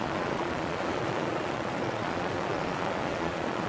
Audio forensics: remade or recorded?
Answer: remade